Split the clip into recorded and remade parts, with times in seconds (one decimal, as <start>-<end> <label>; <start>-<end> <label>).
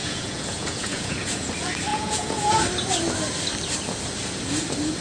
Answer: 0.0-1.5 remade; 1.5-1.9 recorded; 1.9-2.6 remade; 2.6-5.0 recorded